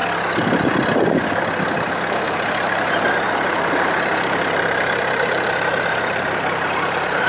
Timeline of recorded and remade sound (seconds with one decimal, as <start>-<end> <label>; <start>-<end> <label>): 0.0-1.8 recorded; 1.8-7.3 remade